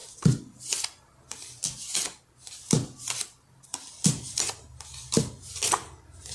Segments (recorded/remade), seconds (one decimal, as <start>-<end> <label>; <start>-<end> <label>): 0.0-6.3 recorded